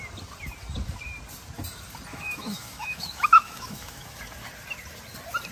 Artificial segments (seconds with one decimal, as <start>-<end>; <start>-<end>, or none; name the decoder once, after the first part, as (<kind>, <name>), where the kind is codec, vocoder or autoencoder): 2.1-4.2 (autoencoder, DAC-VAE)

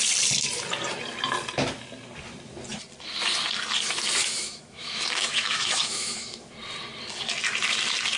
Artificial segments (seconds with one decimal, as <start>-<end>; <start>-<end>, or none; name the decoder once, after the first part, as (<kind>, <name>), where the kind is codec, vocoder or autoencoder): 4.2-6.5 (autoencoder, DAC-VAE)

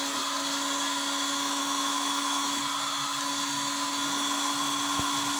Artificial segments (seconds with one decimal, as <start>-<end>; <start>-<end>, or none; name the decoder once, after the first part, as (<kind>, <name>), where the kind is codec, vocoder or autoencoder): 1.6-2.6 (autoencoder, DAC-VAE)

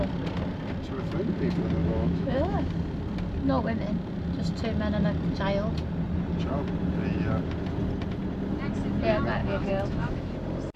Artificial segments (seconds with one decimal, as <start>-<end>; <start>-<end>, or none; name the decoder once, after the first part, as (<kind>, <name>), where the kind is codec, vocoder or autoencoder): 1.8-2.7 (autoencoder, DAC-VAE); 9.4-10.3

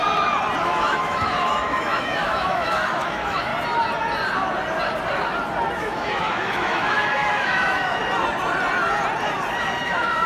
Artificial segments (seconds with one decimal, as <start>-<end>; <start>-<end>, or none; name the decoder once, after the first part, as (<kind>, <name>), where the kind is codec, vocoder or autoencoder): 0.6-3.5 (autoencoder, DAC-VAE); 5.7-8.0; 9.8-10.3

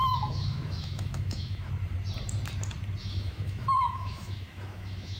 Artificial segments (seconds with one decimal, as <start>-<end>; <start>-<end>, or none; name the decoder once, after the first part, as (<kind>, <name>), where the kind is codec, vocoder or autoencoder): 0.0-1.7 (autoencoder, DAC-VAE); 3.0-5.2